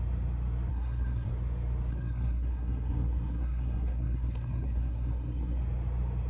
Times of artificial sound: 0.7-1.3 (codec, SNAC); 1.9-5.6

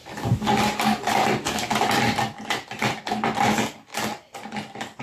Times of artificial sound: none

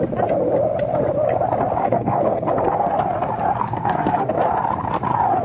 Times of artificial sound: 1.8-2.9 (codec, SNAC); 3.6-4.3